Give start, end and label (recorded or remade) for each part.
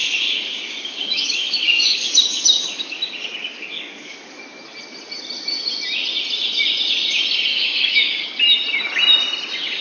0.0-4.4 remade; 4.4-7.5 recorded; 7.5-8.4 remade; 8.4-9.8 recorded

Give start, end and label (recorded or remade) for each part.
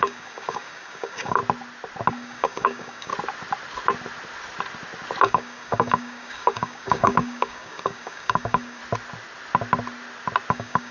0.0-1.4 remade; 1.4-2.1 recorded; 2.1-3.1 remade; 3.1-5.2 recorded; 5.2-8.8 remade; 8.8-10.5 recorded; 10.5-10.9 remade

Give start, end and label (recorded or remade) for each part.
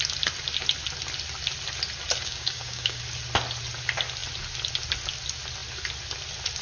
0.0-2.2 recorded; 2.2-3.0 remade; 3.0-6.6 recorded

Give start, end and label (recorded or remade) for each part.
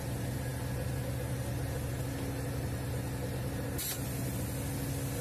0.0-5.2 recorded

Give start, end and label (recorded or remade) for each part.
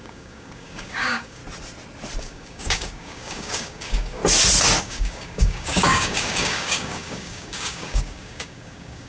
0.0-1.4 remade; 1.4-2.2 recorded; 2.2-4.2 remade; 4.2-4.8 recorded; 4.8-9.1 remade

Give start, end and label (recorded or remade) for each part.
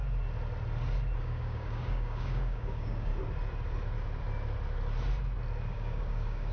0.0-1.2 recorded; 1.2-3.1 remade; 3.1-5.7 recorded; 5.7-6.5 remade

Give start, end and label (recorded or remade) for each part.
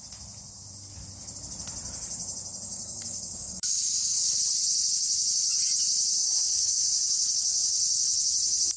0.0-2.7 recorded; 2.7-4.4 remade; 4.4-6.2 recorded; 6.2-6.8 remade; 6.8-8.8 recorded